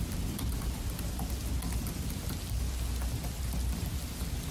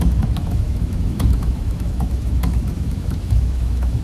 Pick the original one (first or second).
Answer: first